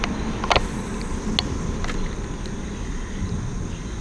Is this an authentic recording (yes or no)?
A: yes